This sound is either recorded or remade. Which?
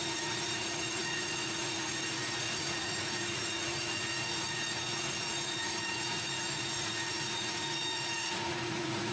remade